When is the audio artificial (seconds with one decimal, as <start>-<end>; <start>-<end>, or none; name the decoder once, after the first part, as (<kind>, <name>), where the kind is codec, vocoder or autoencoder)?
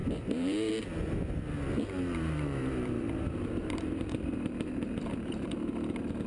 0.0-0.7 (vocoder, BigVGAN v2); 1.7-5.5